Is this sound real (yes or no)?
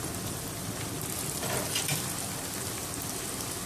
yes